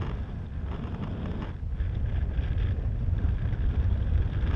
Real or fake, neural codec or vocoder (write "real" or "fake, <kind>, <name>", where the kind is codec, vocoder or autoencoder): real